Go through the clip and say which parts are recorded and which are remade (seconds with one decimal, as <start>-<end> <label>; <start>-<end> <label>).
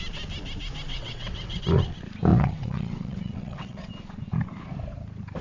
0.0-0.9 recorded; 0.9-1.6 remade; 1.6-2.3 recorded; 2.3-3.9 remade; 3.9-5.4 recorded